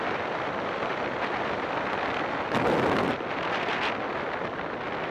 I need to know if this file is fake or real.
fake